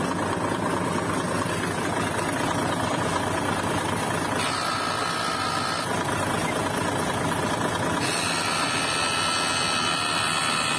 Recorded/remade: recorded